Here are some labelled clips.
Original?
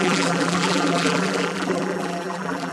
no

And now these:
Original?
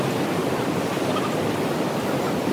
no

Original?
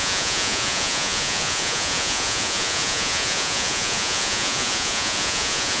no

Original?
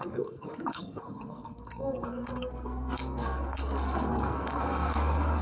no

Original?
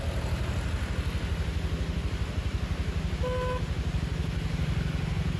yes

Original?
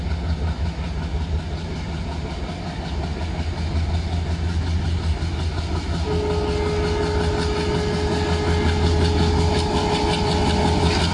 yes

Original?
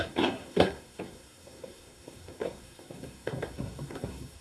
no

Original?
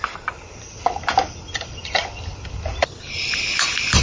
yes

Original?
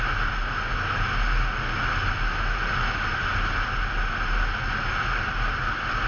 yes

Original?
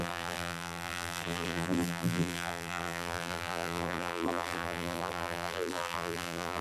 no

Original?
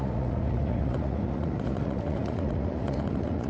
no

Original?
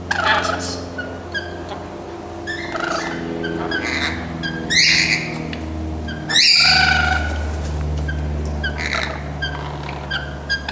yes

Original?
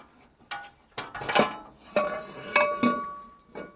yes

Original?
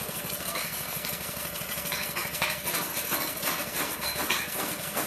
no